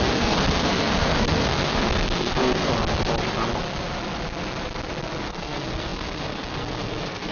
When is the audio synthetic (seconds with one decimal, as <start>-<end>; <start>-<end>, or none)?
0.0-2.7; 5.2-7.3